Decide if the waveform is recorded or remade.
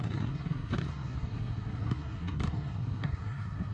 remade